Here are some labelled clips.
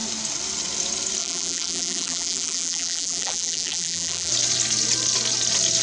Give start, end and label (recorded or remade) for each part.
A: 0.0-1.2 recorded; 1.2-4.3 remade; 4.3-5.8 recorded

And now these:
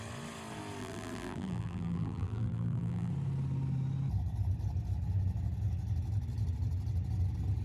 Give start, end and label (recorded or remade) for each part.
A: 0.0-0.8 recorded; 0.8-3.1 remade; 3.1-7.6 recorded

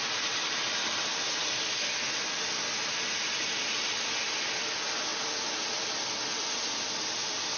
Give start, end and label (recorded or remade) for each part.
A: 0.0-7.6 recorded

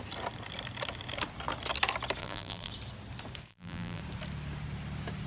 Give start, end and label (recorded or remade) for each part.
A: 0.0-2.2 recorded; 2.2-2.7 remade; 2.7-3.5 recorded; 3.5-4.0 remade; 4.0-5.3 recorded

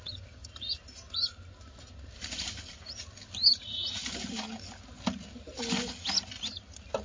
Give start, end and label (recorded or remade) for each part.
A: 0.0-0.4 recorded; 0.4-1.0 remade; 1.0-7.0 recorded

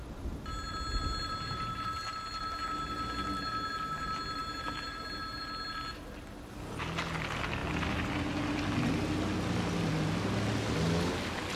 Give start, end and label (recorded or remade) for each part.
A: 0.0-4.4 recorded; 4.4-5.4 remade; 5.4-11.6 recorded

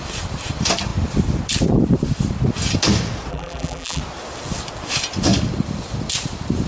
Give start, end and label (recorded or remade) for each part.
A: 0.0-3.3 recorded; 3.3-4.0 remade; 4.0-6.7 recorded

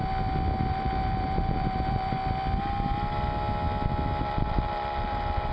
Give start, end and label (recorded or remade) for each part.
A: 0.0-0.7 recorded; 0.7-2.2 remade; 2.2-4.2 recorded; 4.2-5.5 remade